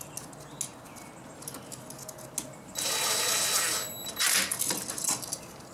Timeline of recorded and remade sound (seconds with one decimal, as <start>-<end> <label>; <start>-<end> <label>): 0.0-5.7 recorded